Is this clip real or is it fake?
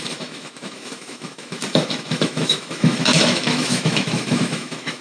fake